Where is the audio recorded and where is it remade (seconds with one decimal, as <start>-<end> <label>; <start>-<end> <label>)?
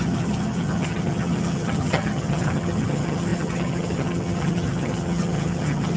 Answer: 0.0-6.0 remade